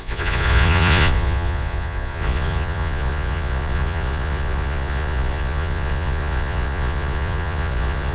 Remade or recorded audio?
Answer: remade